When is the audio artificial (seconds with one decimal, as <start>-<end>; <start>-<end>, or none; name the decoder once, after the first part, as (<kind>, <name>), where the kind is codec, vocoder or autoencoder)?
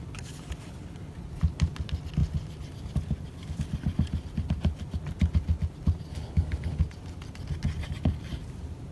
6.1-6.8 (codec, HILCodec)